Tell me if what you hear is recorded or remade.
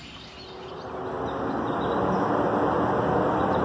recorded